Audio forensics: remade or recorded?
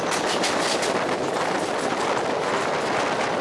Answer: recorded